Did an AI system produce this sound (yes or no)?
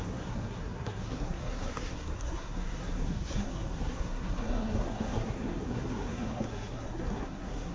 yes